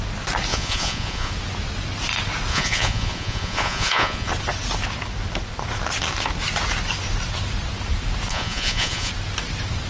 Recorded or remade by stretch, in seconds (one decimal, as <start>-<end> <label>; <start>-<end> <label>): 0.0-0.5 recorded; 0.5-1.3 remade; 1.3-2.5 recorded; 2.5-4.3 remade; 4.3-8.3 recorded; 8.3-9.1 remade; 9.1-9.9 recorded